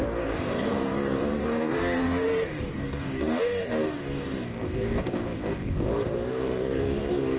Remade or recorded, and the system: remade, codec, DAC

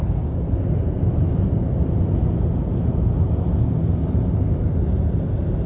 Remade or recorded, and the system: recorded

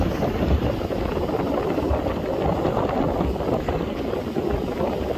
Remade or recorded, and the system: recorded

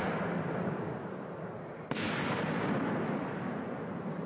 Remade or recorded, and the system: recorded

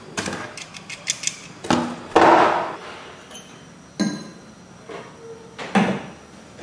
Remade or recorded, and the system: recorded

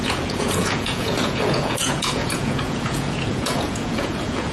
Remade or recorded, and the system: remade, vocoder, Vocos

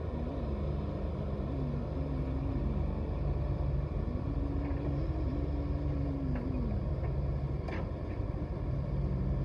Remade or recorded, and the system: recorded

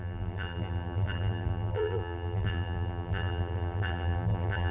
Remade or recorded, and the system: remade, vocoder, BigVGAN v2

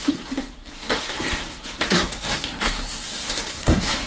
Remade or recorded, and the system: remade, codec, SNAC